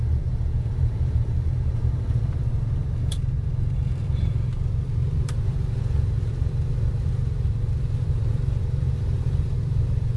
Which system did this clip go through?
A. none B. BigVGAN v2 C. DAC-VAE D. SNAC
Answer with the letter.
B